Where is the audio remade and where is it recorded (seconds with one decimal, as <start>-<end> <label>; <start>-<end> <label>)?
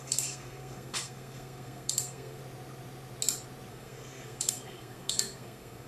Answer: 0.0-2.4 remade; 2.4-3.7 recorded; 3.7-5.9 remade